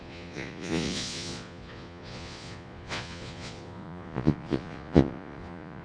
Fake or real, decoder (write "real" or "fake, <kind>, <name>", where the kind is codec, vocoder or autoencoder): fake, vocoder, Vocos